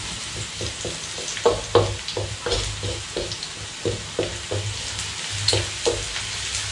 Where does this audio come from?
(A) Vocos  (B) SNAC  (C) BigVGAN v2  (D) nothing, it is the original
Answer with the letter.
D